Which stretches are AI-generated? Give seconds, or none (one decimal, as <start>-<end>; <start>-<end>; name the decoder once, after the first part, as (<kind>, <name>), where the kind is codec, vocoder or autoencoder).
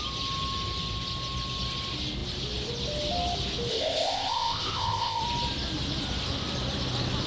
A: 3.7-5.2 (codec, ZipCodec)